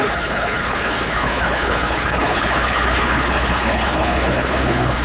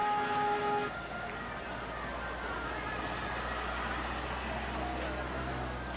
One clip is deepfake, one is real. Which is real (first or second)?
second